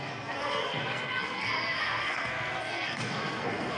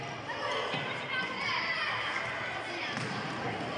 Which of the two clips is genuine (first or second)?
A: second